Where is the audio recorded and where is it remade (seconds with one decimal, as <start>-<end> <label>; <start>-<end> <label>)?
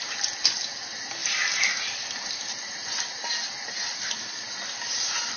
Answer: 0.0-5.4 recorded